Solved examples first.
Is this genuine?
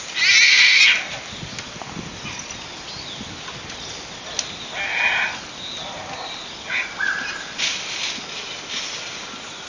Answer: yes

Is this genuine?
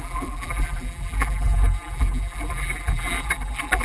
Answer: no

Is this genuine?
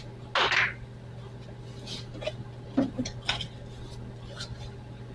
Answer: yes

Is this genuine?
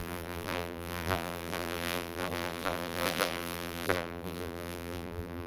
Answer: no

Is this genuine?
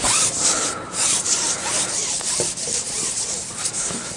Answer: no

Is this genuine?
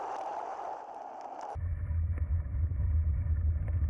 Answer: yes